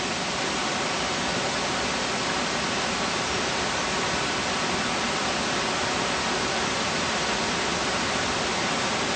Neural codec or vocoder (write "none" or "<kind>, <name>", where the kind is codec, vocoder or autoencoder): none